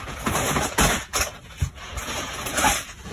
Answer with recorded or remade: remade